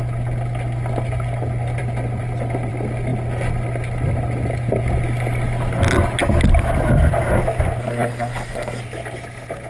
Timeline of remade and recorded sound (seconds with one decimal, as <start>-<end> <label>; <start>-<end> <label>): 0.0-7.8 recorded; 7.8-8.8 remade; 8.8-9.7 recorded